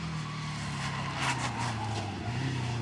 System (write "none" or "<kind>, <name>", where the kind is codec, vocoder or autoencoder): none